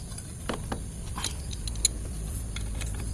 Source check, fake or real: real